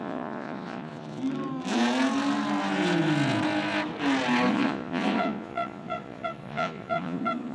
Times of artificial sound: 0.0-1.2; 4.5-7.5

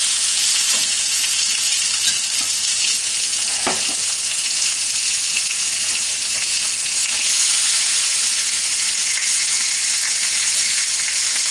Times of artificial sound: 0.0-1.7; 2.5-11.5